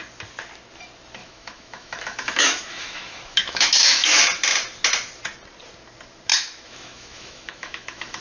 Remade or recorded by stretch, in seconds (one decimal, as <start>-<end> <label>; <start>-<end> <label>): 0.0-1.2 recorded; 1.2-4.2 remade; 4.2-6.3 recorded; 6.3-8.2 remade